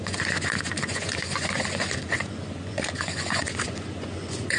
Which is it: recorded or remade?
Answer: remade